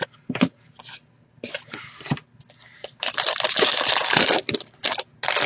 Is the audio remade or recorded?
recorded